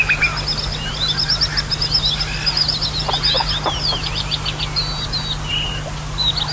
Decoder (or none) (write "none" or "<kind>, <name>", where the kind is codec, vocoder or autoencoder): none